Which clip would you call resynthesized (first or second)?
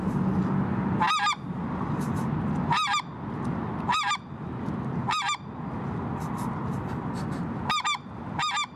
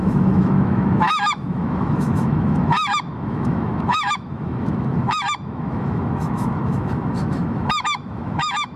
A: second